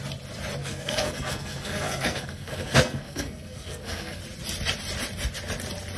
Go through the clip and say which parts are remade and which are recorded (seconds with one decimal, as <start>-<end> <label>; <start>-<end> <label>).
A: 0.0-0.6 recorded; 0.6-4.2 remade; 4.2-6.0 recorded